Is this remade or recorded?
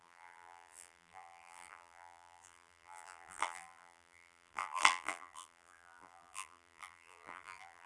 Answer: remade